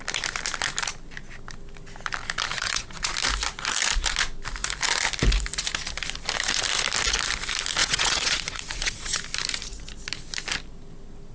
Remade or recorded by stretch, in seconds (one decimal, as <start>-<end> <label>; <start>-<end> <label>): 0.0-2.5 recorded; 2.5-3.1 remade; 3.1-7.8 recorded; 7.8-9.2 remade; 9.2-11.3 recorded